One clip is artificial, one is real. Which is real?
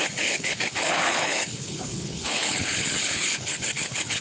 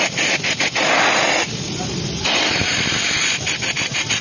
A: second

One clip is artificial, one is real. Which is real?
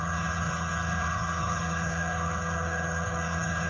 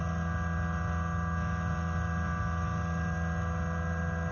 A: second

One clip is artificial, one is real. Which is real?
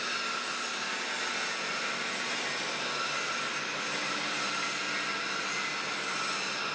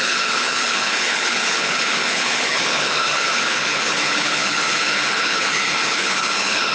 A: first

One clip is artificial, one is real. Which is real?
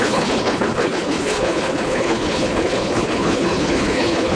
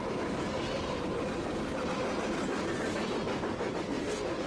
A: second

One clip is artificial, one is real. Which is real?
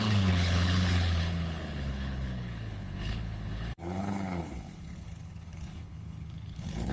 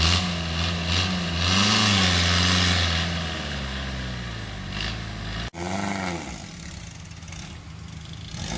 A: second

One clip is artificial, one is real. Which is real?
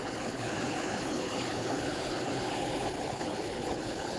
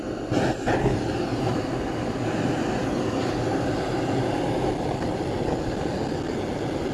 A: second